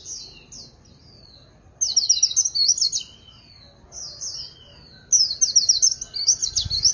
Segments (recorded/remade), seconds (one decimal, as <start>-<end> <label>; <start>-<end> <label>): 0.0-6.9 recorded